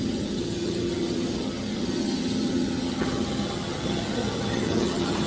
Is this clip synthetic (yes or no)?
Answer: yes